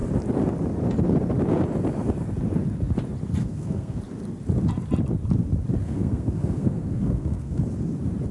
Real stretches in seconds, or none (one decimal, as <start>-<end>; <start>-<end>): 0.0-3.4; 4.0-5.8; 7.6-8.3